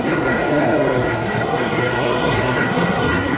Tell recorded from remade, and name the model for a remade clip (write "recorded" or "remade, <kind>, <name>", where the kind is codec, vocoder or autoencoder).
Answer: remade, codec, SNAC